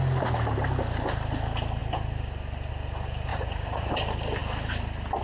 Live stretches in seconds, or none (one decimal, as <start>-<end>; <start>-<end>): 0.0-3.3; 3.9-5.2